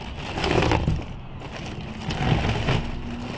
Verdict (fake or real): real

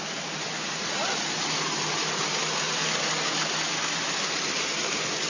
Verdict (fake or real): real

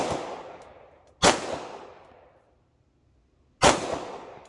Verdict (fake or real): real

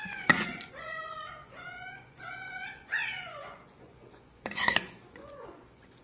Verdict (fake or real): fake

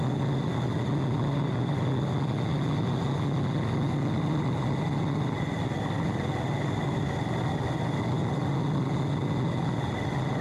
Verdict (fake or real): real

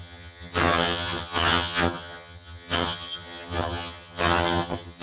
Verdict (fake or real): fake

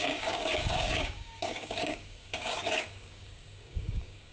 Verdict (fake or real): fake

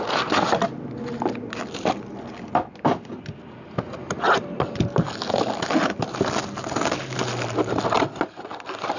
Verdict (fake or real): real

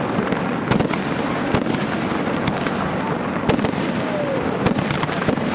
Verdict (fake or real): real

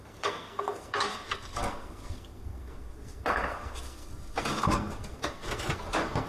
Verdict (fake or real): fake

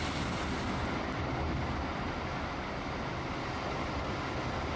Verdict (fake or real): real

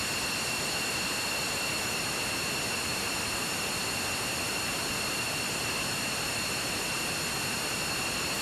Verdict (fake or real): real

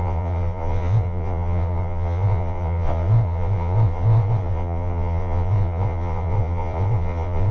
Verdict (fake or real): fake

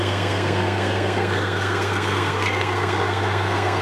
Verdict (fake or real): fake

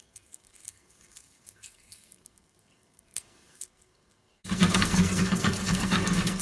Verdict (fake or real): fake